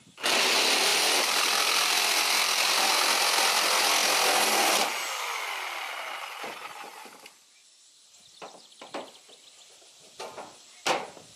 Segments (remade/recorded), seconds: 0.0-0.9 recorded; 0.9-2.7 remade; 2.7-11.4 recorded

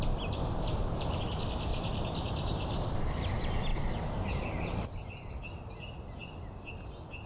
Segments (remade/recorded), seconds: 0.0-0.4 recorded; 0.4-1.2 remade; 1.2-1.7 recorded; 1.7-3.1 remade; 3.1-3.7 recorded; 3.7-5.3 remade; 5.3-7.3 recorded